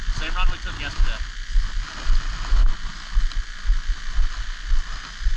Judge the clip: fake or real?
real